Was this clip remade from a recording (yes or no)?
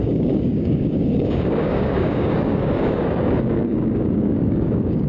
yes